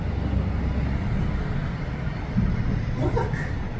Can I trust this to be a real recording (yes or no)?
yes